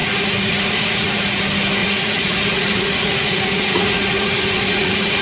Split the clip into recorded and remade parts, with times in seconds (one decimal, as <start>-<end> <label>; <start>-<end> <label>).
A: 0.0-1.4 remade; 1.4-1.8 recorded; 1.8-5.2 remade